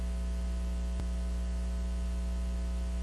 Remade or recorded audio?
recorded